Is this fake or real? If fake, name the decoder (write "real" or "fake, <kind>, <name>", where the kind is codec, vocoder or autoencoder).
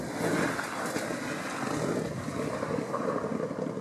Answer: real